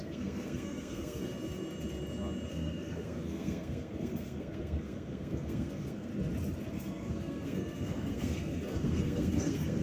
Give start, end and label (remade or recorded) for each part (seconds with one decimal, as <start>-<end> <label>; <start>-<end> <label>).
0.0-1.2 remade; 1.2-2.5 recorded; 2.5-6.1 remade; 6.1-6.7 recorded; 6.7-9.8 remade